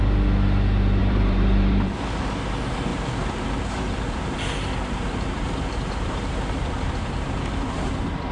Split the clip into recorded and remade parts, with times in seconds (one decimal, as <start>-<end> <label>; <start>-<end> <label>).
0.0-1.0 recorded; 1.0-2.4 remade; 2.4-2.9 recorded; 2.9-7.9 remade; 7.9-8.3 recorded